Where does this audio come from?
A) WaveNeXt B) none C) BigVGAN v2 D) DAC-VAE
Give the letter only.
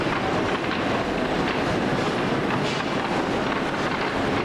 B